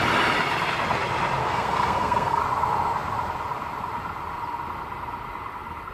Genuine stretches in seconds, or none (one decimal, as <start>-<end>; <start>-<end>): 0.0-1.4; 2.4-5.9